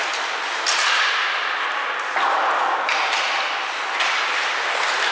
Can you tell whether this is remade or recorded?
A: recorded